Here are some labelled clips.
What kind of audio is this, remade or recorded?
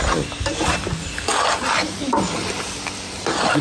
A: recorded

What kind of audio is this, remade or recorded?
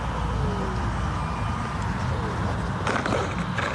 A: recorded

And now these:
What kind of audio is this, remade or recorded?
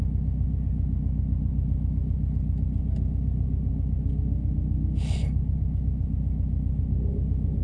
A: recorded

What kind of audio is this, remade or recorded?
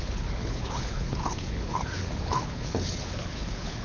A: remade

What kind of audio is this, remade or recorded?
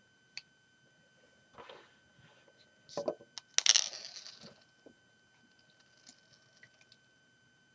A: recorded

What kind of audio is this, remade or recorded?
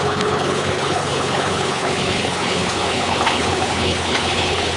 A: remade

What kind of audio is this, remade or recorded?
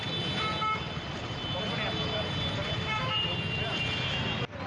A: recorded